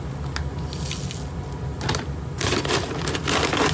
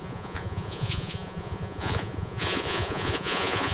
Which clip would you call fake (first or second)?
second